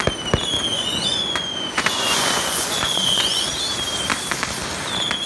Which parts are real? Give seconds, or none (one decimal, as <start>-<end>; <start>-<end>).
0.0-0.7; 3.5-5.3